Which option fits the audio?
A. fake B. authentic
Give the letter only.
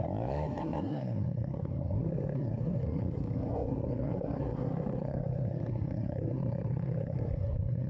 A